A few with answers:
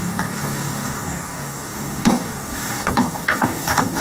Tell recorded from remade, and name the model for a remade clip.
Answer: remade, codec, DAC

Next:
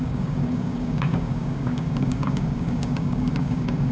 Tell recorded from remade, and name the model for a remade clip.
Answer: remade, codec, DAC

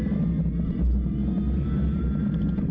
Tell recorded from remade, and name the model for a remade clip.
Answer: recorded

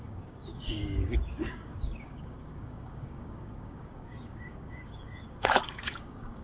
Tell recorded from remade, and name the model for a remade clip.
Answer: remade, codec, DAC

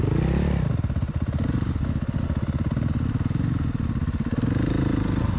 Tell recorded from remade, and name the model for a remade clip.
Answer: recorded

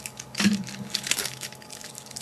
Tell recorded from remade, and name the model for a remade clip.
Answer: remade, codec, DAC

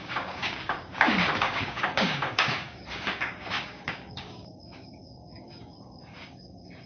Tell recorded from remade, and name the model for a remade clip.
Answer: remade, codec, DAC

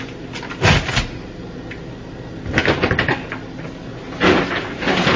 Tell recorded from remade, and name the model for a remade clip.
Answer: recorded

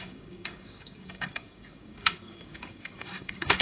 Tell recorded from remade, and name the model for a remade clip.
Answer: remade, codec, DAC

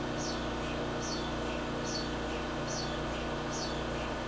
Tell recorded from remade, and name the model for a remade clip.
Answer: recorded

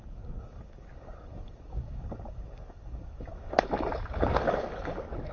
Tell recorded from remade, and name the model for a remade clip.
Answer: remade, codec, DAC